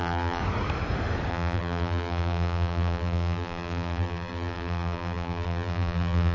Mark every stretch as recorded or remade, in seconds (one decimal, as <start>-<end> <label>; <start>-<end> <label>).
0.0-0.4 remade; 0.4-1.3 recorded; 1.3-6.3 remade

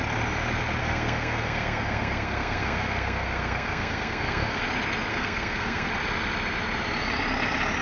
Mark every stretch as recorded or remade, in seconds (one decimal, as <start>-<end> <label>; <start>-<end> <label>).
0.0-0.8 recorded; 0.8-4.6 remade; 4.6-5.1 recorded; 5.1-5.9 remade; 5.9-7.8 recorded